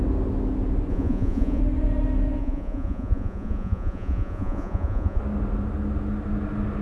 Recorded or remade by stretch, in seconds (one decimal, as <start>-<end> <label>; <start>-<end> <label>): 0.0-0.9 recorded; 0.9-1.6 remade; 1.6-2.4 recorded; 2.4-5.2 remade; 5.2-6.8 recorded